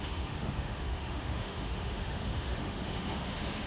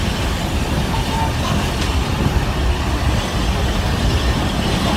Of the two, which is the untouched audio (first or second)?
second